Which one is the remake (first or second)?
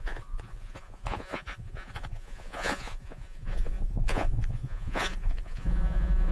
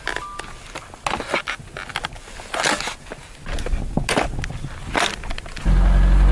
first